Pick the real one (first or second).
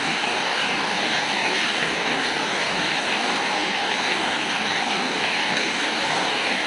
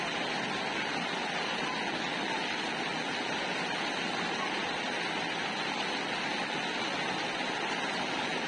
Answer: second